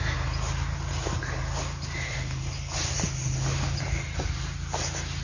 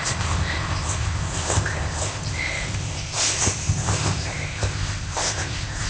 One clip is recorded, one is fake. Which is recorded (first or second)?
first